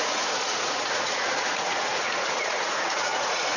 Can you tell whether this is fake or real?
fake